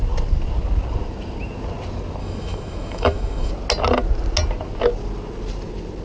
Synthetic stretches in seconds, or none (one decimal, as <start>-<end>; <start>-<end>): 2.2-3.5